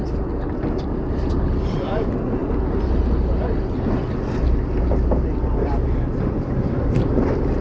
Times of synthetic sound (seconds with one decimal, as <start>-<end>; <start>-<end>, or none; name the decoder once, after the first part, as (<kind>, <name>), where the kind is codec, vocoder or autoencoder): none